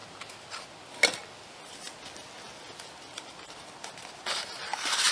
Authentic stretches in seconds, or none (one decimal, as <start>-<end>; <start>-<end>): 0.0-5.1